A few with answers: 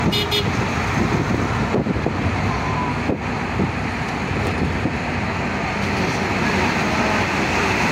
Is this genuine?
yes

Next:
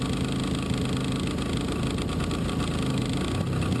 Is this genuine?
yes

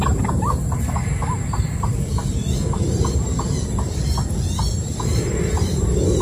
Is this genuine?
no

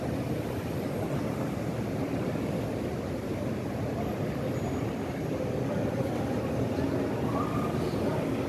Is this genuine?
yes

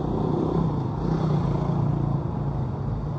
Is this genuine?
yes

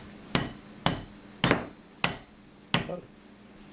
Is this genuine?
yes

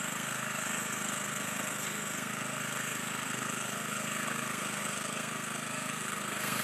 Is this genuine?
no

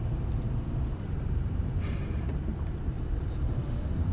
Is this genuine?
no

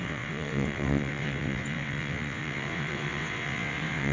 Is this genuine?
no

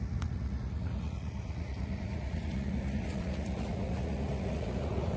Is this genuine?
no